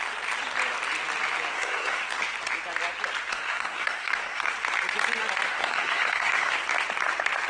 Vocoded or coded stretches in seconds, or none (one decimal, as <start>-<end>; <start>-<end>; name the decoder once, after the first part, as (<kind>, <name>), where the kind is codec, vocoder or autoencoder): 1.5-2.1 (codec, SNAC); 3.3-4.5; 5.5-6.5